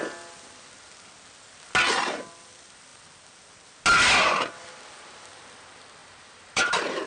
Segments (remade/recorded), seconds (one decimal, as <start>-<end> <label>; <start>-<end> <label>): 0.0-6.0 recorded; 6.0-7.1 remade